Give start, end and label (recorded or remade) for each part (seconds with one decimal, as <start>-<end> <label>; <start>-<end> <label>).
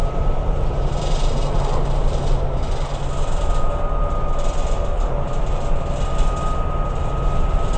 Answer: 0.0-2.4 remade; 2.4-7.8 recorded